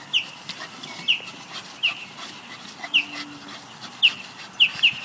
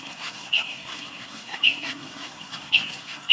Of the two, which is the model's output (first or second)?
second